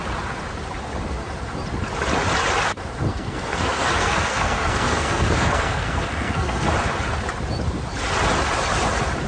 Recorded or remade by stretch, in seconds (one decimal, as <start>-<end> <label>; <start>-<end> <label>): 0.0-3.1 recorded; 3.1-6.7 remade; 6.7-9.3 recorded